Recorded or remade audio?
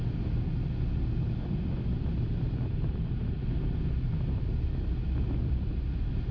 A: recorded